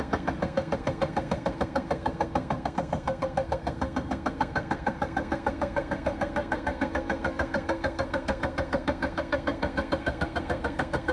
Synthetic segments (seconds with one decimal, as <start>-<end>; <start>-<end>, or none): 0.0-11.1